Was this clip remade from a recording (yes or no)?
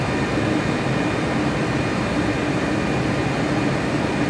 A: no